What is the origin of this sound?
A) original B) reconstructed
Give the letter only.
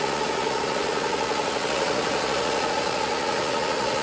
B